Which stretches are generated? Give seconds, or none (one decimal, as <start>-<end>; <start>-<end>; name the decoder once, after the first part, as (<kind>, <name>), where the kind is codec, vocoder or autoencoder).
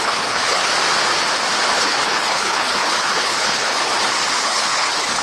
0.0-0.7 (codec, HILCodec); 1.7-3.9; 4.4-5.2